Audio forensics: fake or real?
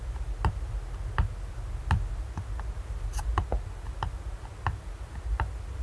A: real